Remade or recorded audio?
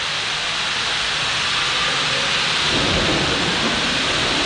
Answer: recorded